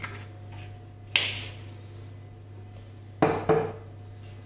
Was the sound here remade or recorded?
recorded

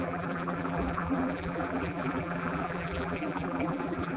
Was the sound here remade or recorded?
remade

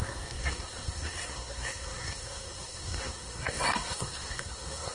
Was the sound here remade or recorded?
remade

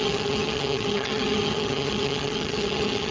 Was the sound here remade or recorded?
remade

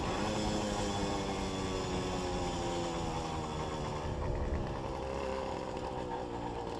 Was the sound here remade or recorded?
recorded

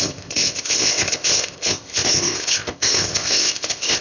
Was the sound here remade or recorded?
remade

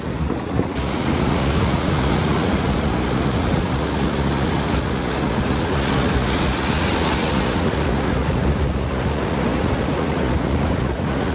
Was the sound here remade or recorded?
remade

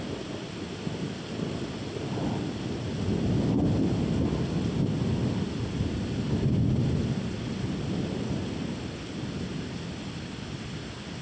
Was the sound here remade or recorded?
recorded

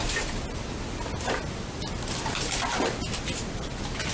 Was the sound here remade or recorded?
recorded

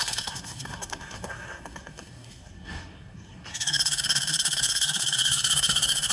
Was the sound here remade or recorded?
remade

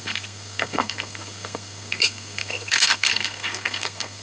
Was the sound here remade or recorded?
remade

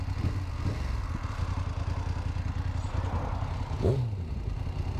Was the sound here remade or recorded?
recorded